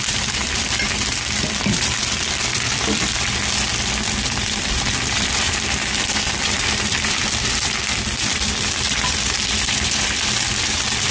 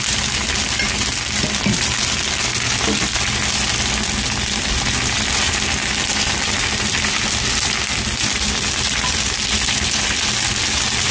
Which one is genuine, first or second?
second